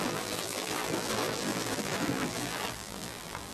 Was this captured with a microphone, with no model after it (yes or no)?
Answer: no